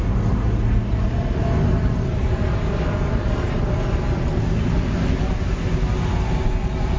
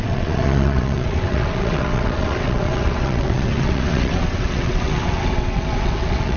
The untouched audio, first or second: first